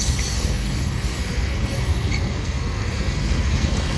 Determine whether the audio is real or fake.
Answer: fake